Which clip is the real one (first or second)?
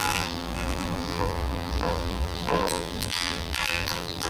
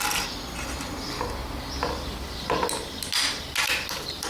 second